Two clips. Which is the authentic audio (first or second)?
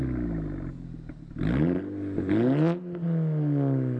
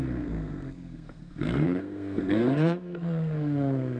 first